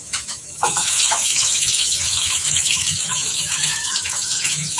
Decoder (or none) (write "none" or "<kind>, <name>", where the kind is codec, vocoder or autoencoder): autoencoder, DAC-VAE